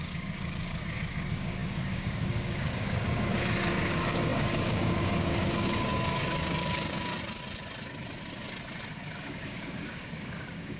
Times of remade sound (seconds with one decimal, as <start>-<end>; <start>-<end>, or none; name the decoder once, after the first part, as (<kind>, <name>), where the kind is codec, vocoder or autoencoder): 0.0-7.1 (codec, DAC); 9.2-10.8